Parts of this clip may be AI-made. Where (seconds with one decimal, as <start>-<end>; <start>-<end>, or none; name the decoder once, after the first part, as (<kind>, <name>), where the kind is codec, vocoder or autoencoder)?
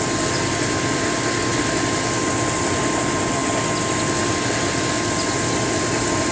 1.5-3.0 (vocoder, BigVGAN v2)